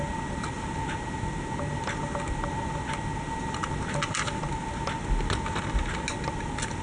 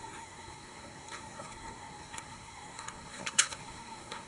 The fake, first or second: second